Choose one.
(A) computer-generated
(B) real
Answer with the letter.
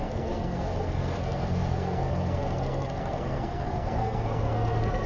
A